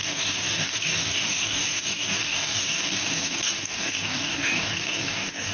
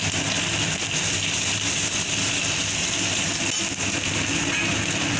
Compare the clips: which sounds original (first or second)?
second